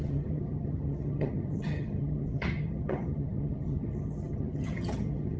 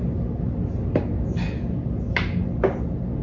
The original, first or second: second